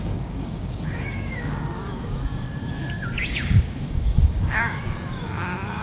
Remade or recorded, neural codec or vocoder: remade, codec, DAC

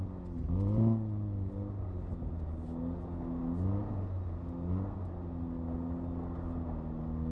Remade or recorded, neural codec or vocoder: recorded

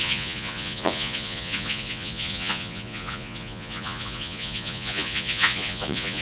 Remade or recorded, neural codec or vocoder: remade, vocoder, Vocos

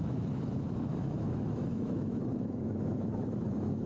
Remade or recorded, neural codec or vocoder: remade, autoencoder, DAC-VAE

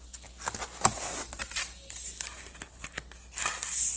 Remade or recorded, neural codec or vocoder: recorded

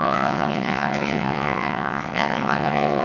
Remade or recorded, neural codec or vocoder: remade, vocoder, WaveNeXt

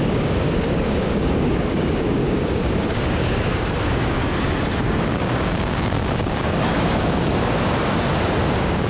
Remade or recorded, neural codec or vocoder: remade, codec, DAC